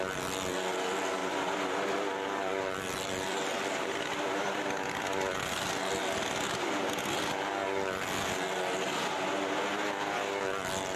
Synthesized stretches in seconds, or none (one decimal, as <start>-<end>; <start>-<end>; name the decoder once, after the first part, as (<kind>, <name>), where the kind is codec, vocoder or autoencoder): 1.2-5.8 (vocoder, BigVGAN v2)